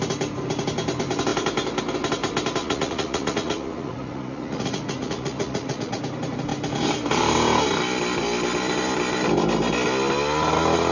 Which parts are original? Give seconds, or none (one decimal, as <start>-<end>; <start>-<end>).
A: 0.0-2.6; 6.0-10.9